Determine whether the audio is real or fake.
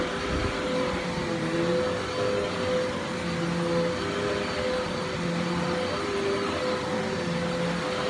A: real